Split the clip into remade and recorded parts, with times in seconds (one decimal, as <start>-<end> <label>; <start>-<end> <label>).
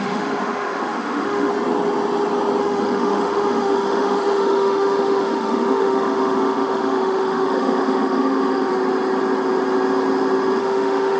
0.0-1.5 remade; 1.5-2.6 recorded; 2.6-8.7 remade; 8.7-10.6 recorded; 10.6-11.2 remade